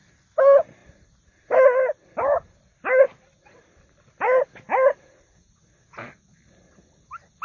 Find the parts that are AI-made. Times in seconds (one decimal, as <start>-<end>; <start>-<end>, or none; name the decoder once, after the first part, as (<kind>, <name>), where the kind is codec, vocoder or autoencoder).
none